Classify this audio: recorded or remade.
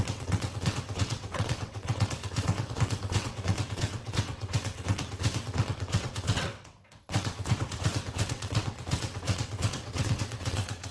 remade